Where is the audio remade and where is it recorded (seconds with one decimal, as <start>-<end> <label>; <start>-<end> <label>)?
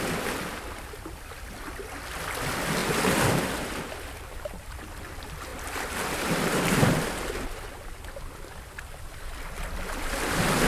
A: 0.0-10.7 recorded